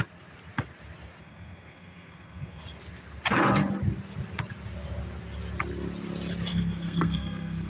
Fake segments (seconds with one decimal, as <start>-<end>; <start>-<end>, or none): 1.2-2.6; 6.5-7.7